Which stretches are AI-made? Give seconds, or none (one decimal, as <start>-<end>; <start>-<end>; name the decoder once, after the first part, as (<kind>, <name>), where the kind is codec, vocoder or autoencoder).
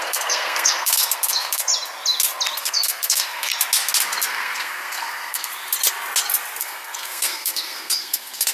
0.0-1.7 (codec, SNAC); 2.6-3.5; 4.3-5.5; 6.6-8.5